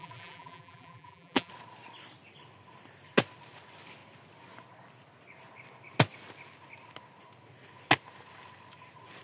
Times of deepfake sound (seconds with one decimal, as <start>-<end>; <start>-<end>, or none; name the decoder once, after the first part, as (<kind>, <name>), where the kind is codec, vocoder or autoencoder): 0.0-1.5 (vocoder, BigVGAN v2)

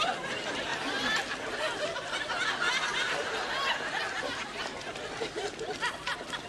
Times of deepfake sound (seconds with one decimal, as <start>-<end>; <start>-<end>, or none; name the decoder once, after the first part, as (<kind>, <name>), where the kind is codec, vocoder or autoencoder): 4.7-6.5 (vocoder, BigVGAN v2)

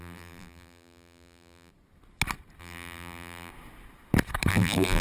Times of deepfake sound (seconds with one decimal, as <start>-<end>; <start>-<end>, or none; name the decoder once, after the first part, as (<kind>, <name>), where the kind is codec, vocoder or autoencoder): 0.0-1.7 (vocoder, BigVGAN v2); 2.6-3.5; 4.5-5.0

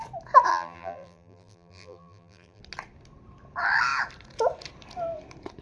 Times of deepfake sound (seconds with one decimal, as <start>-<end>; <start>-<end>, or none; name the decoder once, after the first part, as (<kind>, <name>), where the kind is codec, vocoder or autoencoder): 0.5-2.6 (vocoder, BigVGAN v2)

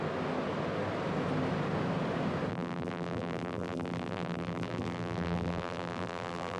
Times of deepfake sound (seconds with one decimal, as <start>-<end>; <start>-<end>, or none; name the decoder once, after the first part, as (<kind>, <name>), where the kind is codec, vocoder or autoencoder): 2.5-6.6 (vocoder, BigVGAN v2)

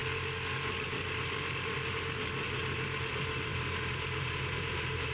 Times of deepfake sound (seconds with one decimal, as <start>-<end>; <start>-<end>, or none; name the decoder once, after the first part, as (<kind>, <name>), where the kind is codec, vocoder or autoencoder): 3.1-5.1 (vocoder, BigVGAN v2)